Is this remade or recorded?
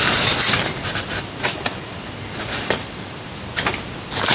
recorded